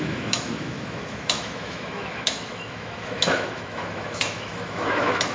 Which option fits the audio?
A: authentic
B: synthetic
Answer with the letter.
B